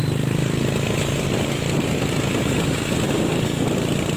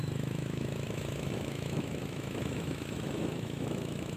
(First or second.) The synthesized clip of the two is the second